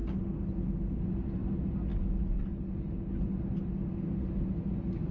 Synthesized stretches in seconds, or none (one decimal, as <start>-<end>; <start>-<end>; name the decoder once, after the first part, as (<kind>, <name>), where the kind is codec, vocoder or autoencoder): none